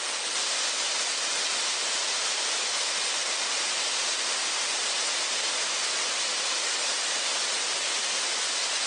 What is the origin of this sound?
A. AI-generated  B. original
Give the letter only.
B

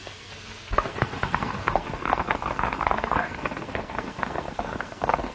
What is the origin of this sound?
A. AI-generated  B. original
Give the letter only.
A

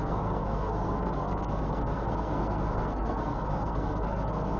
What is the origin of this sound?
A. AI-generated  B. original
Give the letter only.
A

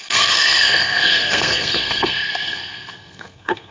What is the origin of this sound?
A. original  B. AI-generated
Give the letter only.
B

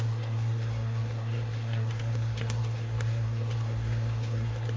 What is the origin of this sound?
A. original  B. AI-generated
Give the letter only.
B